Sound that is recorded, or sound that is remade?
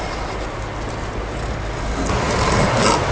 recorded